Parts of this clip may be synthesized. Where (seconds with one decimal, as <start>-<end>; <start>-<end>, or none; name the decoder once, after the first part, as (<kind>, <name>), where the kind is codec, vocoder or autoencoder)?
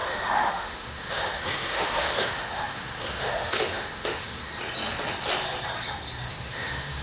0.0-4.5 (autoencoder, DAC-VAE); 6.3-7.0